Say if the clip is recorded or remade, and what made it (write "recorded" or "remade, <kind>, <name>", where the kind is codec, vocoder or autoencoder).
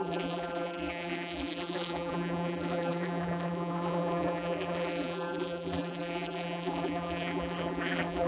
remade, vocoder, BigVGAN v2